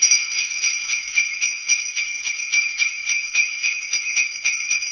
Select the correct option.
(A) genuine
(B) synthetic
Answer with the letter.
B